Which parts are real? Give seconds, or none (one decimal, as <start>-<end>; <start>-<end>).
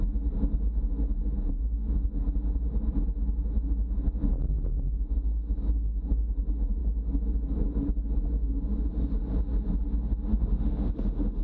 0.0-10.3